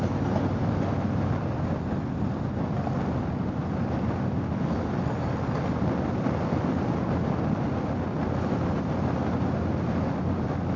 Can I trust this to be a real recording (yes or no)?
yes